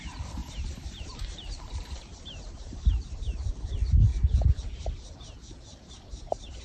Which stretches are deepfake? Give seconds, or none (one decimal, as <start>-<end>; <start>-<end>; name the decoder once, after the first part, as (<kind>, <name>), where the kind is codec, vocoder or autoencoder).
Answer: 0.4-3.2 (vocoder, BigVGAN v2); 4.1-5.1; 5.7-6.6